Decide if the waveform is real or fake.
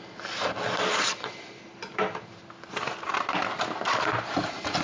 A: real